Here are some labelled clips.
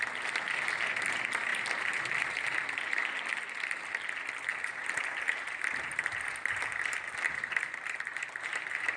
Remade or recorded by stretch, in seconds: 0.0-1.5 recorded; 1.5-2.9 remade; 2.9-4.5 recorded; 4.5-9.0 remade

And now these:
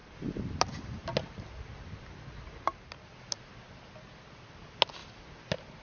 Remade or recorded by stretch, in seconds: 0.0-3.2 remade; 3.2-5.0 recorded; 5.0-5.8 remade